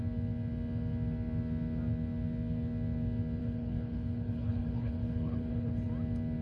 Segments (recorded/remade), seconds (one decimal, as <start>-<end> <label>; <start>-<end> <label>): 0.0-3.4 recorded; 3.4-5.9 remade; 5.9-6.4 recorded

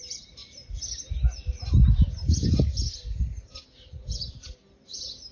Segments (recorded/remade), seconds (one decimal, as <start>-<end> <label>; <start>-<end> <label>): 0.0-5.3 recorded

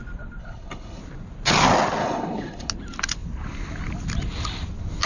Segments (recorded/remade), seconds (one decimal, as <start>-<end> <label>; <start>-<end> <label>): 0.0-0.4 recorded; 0.4-1.0 remade; 1.0-2.0 recorded; 2.0-2.7 remade; 2.7-5.1 recorded

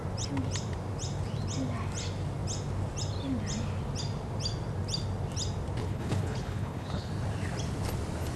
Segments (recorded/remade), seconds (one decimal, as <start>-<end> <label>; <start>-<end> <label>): 0.0-5.8 recorded; 5.8-7.1 remade; 7.1-8.4 recorded

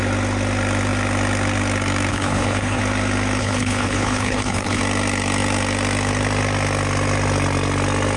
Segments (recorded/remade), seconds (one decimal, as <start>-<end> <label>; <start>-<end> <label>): 0.0-2.1 recorded; 2.1-2.8 remade; 2.8-3.4 recorded; 3.4-4.8 remade; 4.8-8.2 recorded

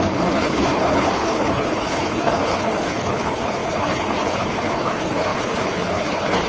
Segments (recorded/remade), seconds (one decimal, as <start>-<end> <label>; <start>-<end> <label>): 0.0-6.5 remade

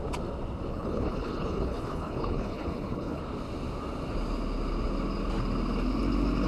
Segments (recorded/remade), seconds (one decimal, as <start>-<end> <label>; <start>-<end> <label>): 0.0-0.7 recorded; 0.7-3.2 remade; 3.2-6.5 recorded

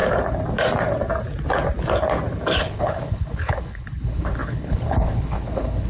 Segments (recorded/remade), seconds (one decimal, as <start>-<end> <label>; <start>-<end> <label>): 0.0-2.6 recorded; 2.6-5.9 remade